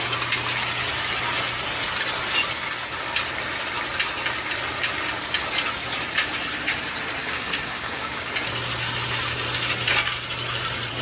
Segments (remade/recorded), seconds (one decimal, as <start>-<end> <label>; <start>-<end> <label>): 0.0-7.2 recorded; 7.2-8.3 remade; 8.3-11.0 recorded